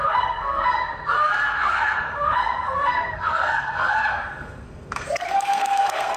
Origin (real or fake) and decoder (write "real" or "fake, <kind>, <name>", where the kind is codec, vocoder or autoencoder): fake, codec, SNAC